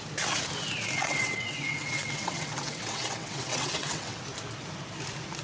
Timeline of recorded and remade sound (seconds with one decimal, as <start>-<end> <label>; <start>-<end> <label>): 0.0-1.0 recorded; 1.0-4.2 remade; 4.2-5.4 recorded